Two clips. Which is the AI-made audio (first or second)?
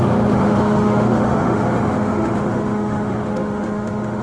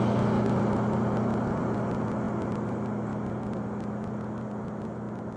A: first